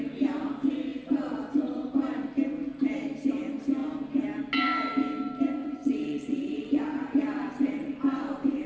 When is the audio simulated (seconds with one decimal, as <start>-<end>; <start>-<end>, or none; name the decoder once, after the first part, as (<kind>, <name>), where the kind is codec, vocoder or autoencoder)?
0.9-1.9 (vocoder, WaveNeXt); 5.6-8.2